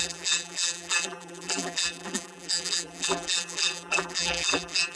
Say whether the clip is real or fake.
fake